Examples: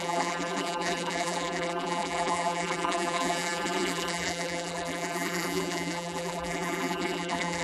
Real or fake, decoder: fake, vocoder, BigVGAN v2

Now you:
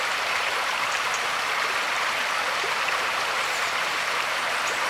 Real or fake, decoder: fake, vocoder, BigVGAN v2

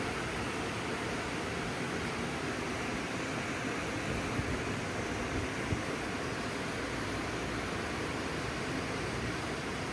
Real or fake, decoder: real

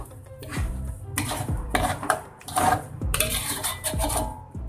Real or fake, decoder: fake, vocoder, BigVGAN v2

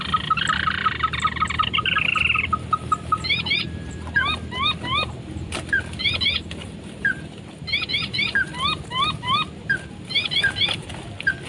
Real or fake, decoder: fake, vocoder, BigVGAN v2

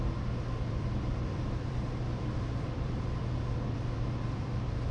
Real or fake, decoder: fake, vocoder, BigVGAN v2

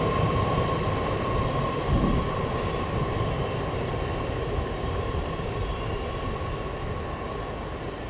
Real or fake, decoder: real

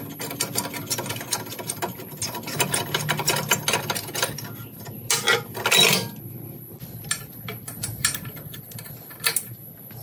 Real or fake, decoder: real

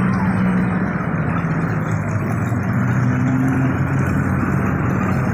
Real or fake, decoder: real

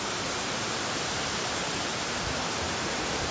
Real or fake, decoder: fake, vocoder, BigVGAN v2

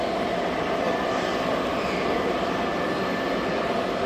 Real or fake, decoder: real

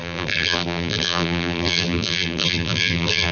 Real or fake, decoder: fake, vocoder, BigVGAN v2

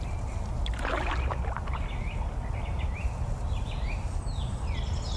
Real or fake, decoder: real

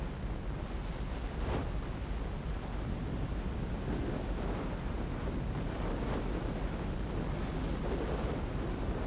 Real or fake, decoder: real